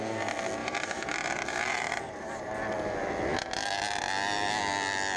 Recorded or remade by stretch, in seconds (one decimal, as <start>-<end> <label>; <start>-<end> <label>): 0.0-0.6 recorded; 0.6-2.6 remade; 2.6-5.2 recorded